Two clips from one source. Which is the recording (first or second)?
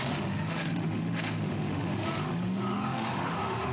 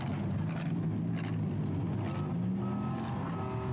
second